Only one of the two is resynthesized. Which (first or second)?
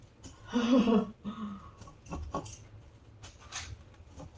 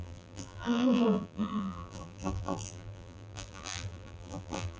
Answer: second